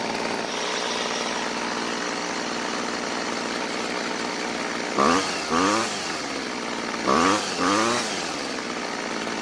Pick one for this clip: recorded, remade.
recorded